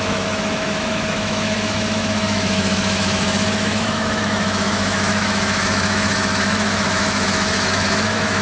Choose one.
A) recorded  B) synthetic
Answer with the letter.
B